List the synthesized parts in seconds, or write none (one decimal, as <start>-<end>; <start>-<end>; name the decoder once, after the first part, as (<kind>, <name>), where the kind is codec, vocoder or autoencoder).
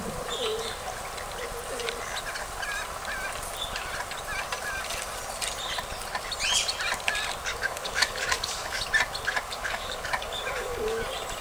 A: 7.5-8.8 (codec, DAC); 9.3-11.0